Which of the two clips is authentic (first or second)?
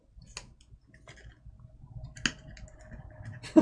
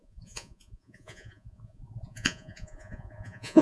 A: first